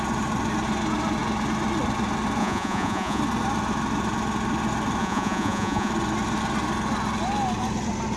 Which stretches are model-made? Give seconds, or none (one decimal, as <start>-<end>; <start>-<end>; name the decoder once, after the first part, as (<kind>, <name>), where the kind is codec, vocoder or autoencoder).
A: 2.4-3.2 (vocoder, Vocos); 5.0-5.9